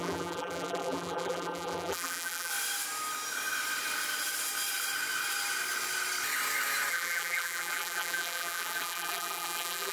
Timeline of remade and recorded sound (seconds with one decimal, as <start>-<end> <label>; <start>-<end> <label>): 0.0-2.5 remade; 2.5-6.9 recorded; 6.9-9.9 remade

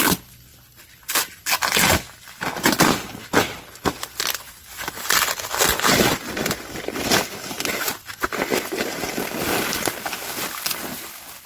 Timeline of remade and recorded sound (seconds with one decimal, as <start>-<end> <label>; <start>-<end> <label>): 0.0-11.5 recorded

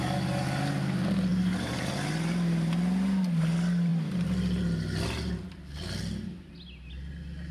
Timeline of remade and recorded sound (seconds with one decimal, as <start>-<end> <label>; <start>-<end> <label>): 0.0-1.3 recorded; 1.3-1.9 remade; 1.9-7.5 recorded

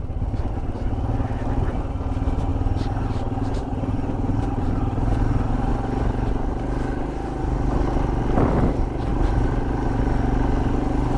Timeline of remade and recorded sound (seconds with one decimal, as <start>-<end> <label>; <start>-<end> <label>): 0.0-2.5 recorded; 2.5-5.7 remade; 5.7-9.1 recorded; 9.1-10.0 remade; 10.0-11.2 recorded